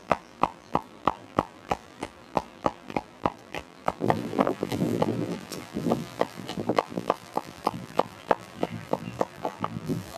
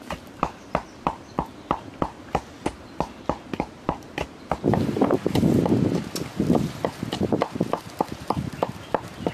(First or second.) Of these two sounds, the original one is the second